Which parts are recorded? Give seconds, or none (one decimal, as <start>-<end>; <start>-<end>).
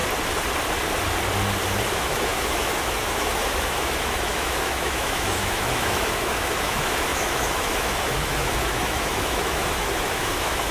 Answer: 0.0-1.9